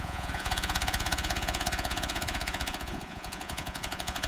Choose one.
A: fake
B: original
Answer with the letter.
A